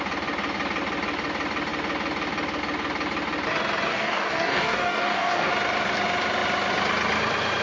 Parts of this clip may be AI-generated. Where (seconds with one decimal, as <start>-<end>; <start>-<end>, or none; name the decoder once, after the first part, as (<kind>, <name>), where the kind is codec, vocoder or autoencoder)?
3.9-5.5 (codec, DAC)